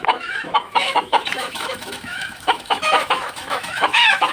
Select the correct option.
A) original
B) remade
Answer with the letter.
B